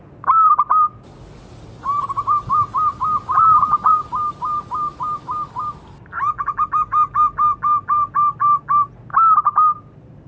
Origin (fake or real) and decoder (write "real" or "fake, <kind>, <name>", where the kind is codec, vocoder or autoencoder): real